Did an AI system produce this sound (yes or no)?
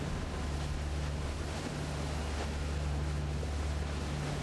no